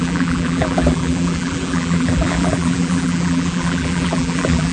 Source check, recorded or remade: remade